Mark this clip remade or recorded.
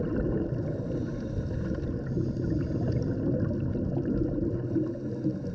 recorded